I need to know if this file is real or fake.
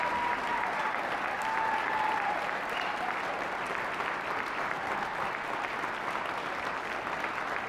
real